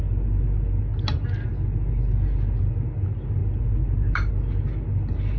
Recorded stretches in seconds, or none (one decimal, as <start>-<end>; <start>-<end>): 0.0-5.4